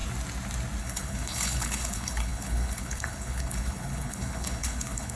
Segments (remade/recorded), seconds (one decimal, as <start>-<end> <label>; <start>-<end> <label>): 0.0-0.8 recorded; 0.8-5.2 remade